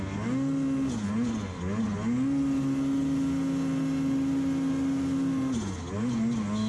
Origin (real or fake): real